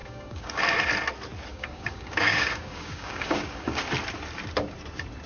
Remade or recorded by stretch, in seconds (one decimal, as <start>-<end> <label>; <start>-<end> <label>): 0.0-0.6 remade; 0.6-1.5 recorded; 1.5-3.8 remade; 3.8-5.3 recorded